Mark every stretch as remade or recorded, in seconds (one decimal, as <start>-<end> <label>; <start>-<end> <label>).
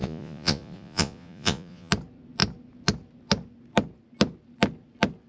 0.0-1.9 remade; 1.9-5.3 recorded